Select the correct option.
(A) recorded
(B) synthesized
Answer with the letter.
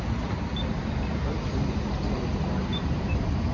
A